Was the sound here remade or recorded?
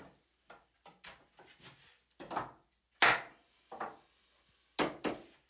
recorded